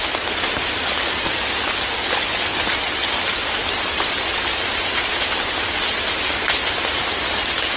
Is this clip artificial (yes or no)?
no